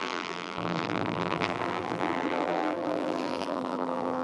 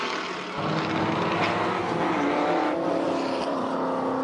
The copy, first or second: first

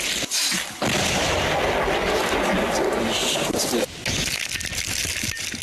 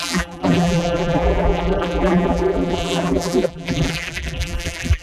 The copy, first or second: second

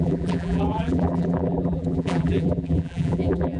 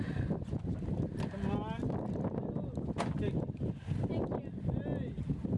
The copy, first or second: first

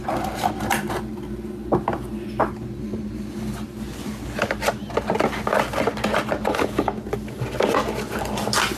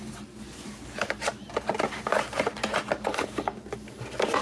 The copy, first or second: second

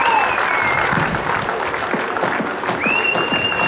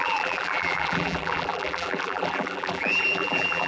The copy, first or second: second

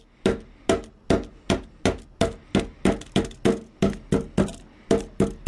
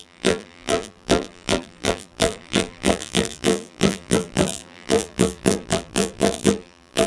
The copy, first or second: second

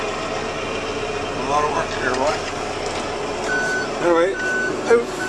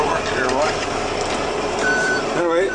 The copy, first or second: second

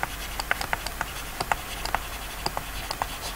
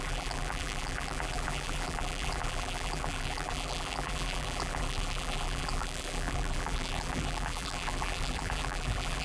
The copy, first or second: second